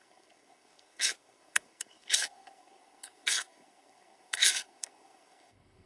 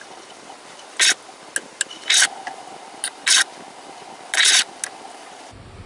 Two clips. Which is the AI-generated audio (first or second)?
first